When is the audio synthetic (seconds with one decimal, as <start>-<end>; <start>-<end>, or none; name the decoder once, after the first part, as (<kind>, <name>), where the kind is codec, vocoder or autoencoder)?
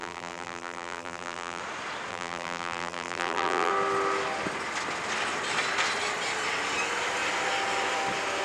0.0-1.6 (vocoder, BigVGAN v2); 2.1-3.7